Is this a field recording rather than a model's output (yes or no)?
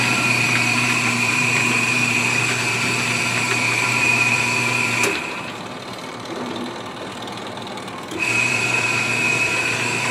no